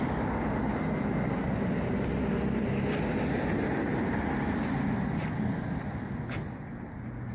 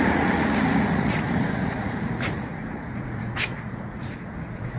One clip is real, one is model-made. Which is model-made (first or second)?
second